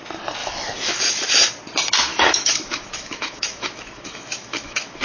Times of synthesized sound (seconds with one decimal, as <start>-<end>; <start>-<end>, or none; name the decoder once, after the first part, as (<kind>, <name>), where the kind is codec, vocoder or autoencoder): 0.4-1.0 (autoencoder, DAC-VAE); 2.1-5.0